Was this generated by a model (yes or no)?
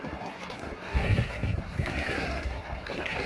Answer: yes